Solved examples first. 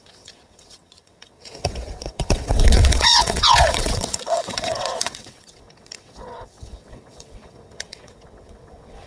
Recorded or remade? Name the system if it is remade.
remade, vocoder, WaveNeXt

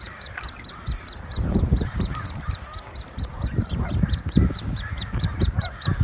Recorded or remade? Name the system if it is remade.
remade, vocoder, BigVGAN v2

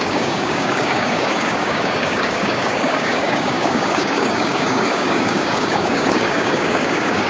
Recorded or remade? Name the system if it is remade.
remade, codec, DAC